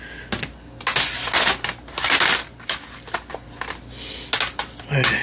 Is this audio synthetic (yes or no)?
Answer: no